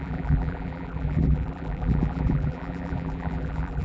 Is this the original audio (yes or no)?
no